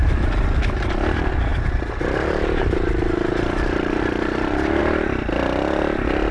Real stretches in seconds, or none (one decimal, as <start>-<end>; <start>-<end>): 0.9-1.5; 4.8-6.3